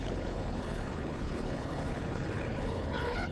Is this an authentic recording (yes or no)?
no